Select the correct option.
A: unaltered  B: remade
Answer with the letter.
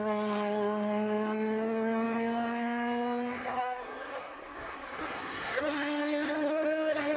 B